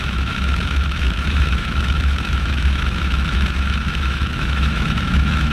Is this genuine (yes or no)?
no